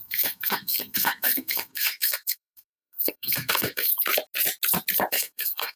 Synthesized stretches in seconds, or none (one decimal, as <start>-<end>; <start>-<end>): 0.0-3.9; 5.1-5.8